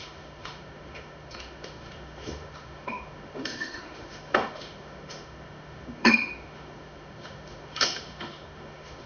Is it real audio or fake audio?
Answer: fake